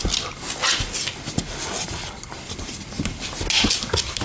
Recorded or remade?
recorded